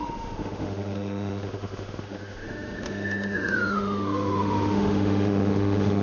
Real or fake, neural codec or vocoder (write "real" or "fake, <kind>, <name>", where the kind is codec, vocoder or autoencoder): fake, autoencoder, DAC-VAE